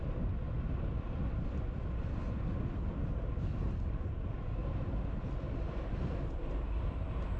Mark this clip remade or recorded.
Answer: recorded